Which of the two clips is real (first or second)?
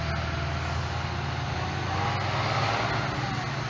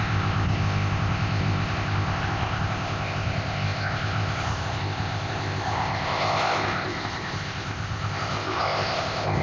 first